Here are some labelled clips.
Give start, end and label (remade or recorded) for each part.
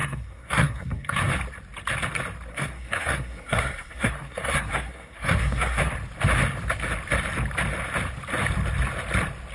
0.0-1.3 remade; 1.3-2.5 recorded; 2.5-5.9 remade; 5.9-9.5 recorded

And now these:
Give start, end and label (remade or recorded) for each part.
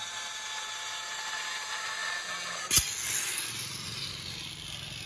0.0-5.1 recorded